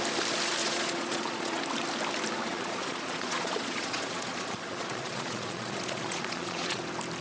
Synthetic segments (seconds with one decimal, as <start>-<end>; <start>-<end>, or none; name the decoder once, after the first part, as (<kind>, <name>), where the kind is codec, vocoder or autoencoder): 0.6-1.6 (vocoder, Vocos); 2.5-6.8

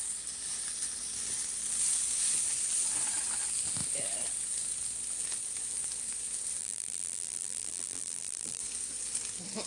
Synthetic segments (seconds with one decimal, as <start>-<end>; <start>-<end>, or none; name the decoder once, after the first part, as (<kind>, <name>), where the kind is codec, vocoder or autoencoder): 6.6-8.6 (vocoder, BigVGAN v2)

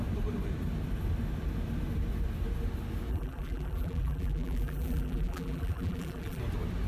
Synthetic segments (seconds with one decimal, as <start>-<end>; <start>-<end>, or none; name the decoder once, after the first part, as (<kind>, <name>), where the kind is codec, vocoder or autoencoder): 3.1-6.4 (vocoder, BigVGAN v2)

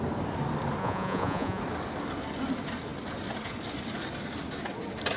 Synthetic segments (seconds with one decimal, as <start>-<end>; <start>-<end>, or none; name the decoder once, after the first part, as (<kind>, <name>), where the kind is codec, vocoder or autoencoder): 0.8-1.6 (vocoder, Vocos)

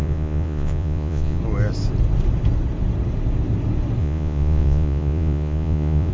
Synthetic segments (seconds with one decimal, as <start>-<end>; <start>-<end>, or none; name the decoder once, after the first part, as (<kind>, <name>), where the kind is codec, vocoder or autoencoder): 0.0-1.4 (vocoder, Vocos); 4.0-6.1

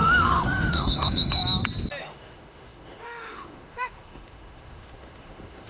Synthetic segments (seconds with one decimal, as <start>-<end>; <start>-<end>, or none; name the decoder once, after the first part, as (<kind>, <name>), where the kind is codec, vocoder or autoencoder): 0.0-1.4 (autoencoder, DAC-VAE); 2.0-5.7

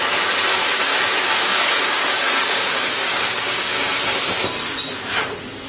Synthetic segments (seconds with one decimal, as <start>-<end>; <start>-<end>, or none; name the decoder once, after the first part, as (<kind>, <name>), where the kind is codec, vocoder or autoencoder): 0.6-4.0 (codec, DAC)

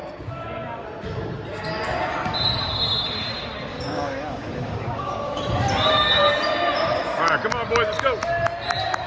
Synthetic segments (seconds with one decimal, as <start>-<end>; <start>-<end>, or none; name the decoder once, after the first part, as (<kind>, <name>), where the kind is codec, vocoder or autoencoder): 3.7-5.4 (codec, DAC)